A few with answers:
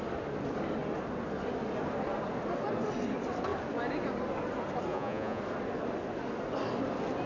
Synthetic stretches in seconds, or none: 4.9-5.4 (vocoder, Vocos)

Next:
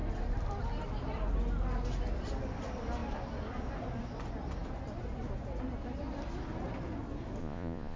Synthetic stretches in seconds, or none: 7.4-8.0 (vocoder, Vocos)

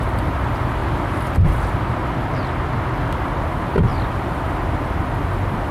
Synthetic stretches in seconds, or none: none